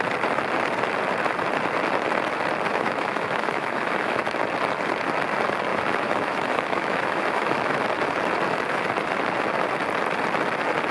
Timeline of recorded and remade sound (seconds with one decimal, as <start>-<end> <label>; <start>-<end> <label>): 0.0-2.7 recorded; 2.7-4.3 remade; 4.3-5.7 recorded; 5.7-7.8 remade; 7.8-10.9 recorded